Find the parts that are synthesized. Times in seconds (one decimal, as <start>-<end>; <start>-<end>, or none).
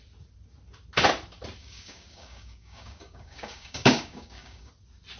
1.6-4.7